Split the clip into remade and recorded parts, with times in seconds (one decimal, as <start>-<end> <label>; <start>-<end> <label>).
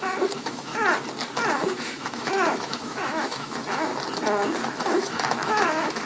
0.0-0.7 remade; 0.7-1.6 recorded; 1.6-3.9 remade; 3.9-4.8 recorded; 4.8-6.1 remade